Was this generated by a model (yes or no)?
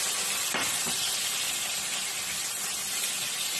no